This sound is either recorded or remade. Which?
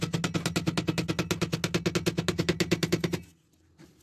recorded